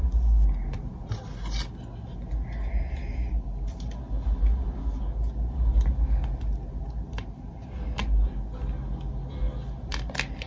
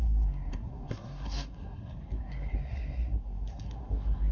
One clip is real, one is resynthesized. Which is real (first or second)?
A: first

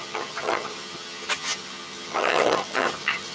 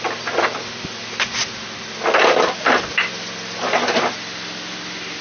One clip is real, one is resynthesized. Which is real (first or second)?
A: second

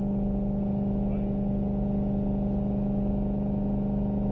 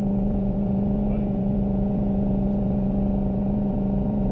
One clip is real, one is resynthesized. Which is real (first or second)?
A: first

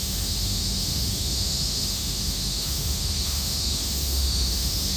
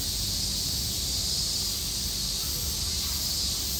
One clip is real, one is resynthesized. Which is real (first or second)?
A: second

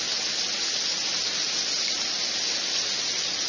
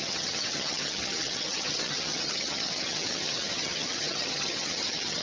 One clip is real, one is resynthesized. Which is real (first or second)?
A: first